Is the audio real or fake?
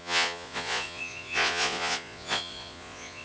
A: fake